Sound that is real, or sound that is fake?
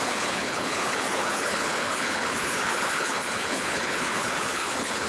fake